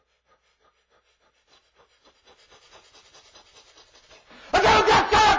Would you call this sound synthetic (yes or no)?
no